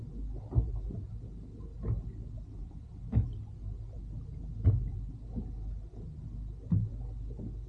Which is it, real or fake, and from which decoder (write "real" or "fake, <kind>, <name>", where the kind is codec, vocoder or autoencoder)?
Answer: real